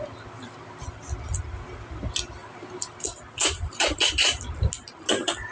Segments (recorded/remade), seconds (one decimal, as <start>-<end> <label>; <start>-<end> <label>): 0.0-2.4 recorded; 2.4-4.7 remade; 4.7-5.5 recorded